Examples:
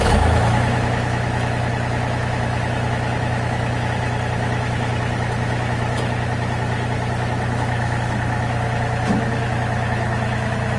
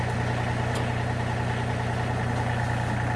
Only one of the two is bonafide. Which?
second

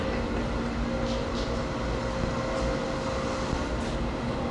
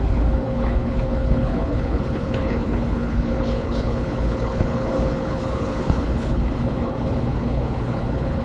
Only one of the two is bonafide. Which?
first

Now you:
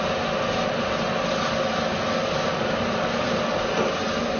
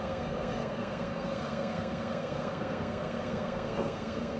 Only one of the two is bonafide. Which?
first